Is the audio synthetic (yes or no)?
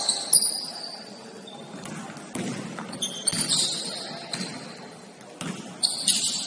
no